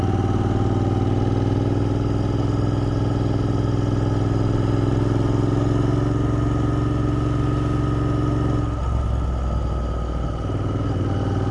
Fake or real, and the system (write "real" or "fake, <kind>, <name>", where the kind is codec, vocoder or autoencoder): real